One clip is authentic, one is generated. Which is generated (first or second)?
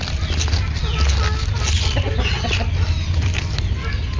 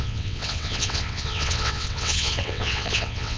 second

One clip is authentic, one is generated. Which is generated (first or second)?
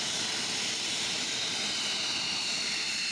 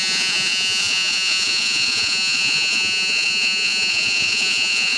second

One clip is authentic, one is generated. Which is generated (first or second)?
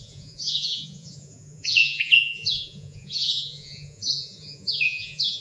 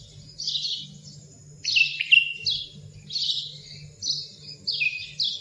first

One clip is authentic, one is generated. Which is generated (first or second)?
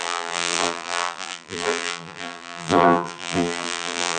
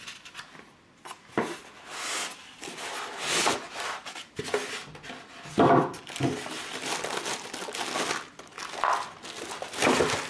first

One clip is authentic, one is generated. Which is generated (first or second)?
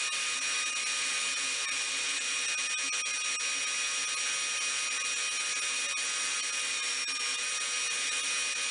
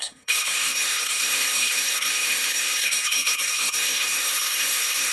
second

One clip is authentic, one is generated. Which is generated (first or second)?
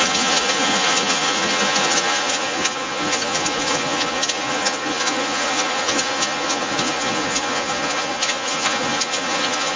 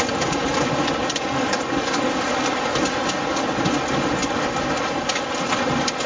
first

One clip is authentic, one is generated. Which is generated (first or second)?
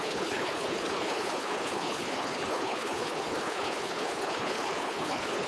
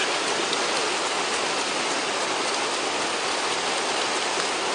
first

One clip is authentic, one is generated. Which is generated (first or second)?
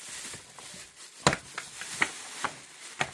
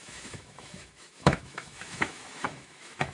second